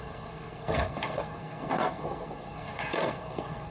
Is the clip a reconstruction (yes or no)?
yes